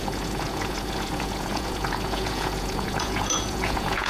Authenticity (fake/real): fake